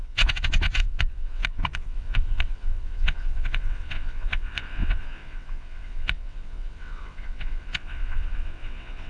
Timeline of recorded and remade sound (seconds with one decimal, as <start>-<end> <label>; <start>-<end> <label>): 0.0-9.1 remade